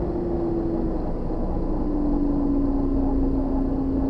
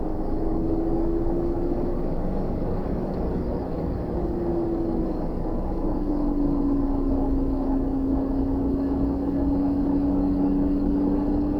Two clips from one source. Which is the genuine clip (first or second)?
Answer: first